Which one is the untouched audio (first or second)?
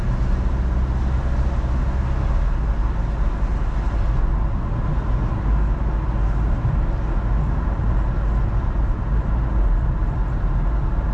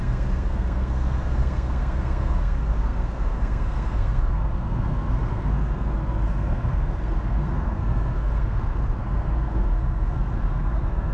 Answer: first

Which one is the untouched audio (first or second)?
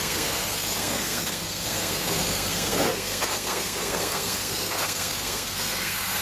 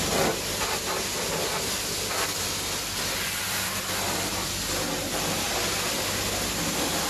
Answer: second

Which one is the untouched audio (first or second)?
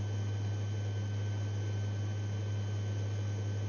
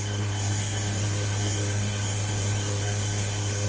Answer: first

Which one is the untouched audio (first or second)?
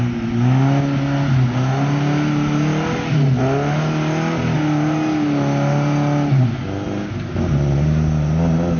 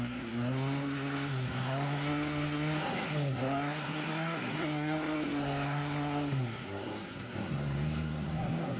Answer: first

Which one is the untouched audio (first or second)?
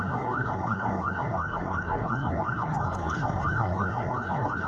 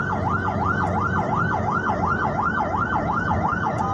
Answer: second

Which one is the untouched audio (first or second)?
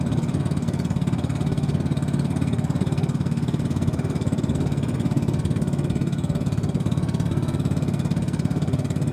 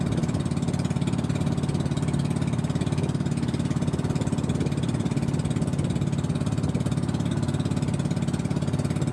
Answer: second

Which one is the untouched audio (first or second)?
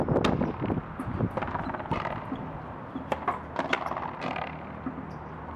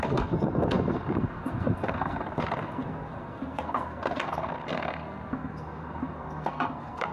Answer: first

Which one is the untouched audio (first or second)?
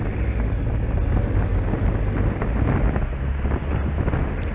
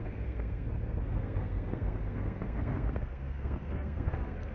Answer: first